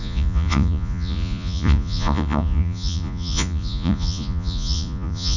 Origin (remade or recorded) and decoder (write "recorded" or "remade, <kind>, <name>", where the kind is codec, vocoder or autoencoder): remade, vocoder, Vocos